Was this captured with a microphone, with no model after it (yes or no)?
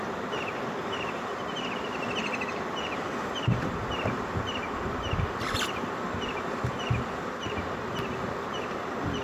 yes